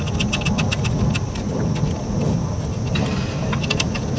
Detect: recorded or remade recorded